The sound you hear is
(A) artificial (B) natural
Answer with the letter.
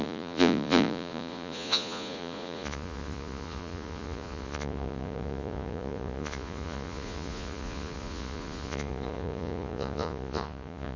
A